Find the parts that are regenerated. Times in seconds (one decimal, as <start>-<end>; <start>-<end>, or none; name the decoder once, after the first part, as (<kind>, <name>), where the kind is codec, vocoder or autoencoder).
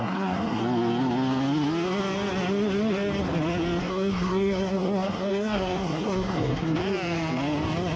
0.0-0.6 (codec, SNAC); 3.8-6.8